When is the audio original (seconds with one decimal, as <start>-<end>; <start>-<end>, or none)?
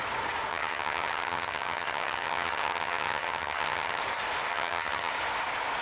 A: 0.0-0.5; 4.0-4.5; 5.1-5.8